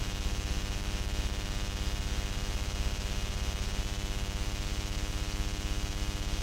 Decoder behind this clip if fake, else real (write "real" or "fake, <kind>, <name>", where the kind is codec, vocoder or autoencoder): real